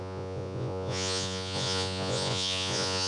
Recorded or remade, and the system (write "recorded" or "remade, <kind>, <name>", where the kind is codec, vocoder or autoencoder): remade, vocoder, Vocos